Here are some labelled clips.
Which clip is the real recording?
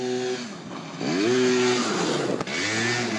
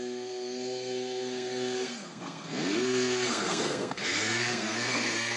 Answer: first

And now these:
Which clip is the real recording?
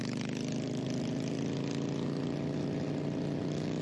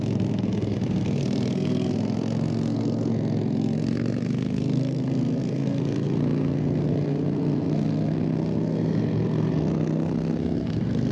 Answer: first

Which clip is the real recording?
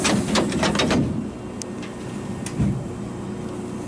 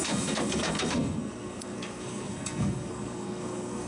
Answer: first